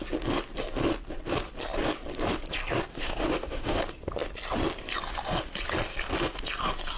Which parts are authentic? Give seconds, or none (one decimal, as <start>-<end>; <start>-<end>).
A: 0.0-2.9; 3.8-7.0